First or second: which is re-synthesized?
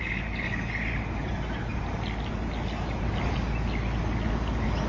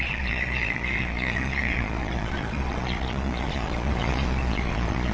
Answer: second